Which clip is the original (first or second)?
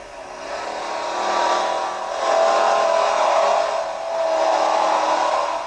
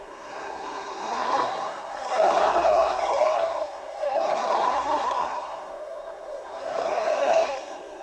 first